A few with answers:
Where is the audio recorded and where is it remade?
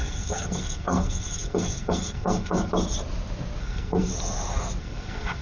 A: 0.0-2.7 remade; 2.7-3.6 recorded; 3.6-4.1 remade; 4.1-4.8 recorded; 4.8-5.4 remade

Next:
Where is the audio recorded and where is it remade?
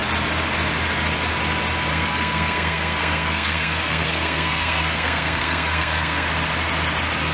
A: 0.0-1.9 recorded; 1.9-6.3 remade; 6.3-7.3 recorded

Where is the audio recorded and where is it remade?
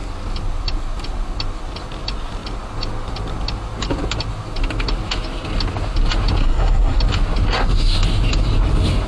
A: 0.0-6.4 recorded; 6.4-7.0 remade; 7.0-9.1 recorded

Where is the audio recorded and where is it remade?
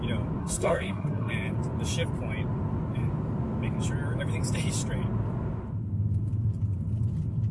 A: 0.0-0.4 recorded; 0.4-1.3 remade; 1.3-7.5 recorded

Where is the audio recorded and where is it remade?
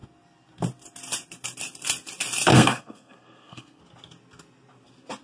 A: 0.0-2.5 recorded; 2.5-3.8 remade; 3.8-5.2 recorded